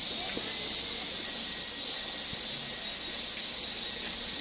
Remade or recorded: recorded